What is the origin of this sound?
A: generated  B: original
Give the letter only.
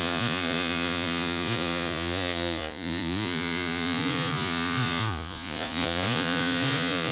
A